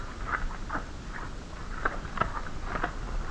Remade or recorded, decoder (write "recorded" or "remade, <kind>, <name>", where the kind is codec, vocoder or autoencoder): recorded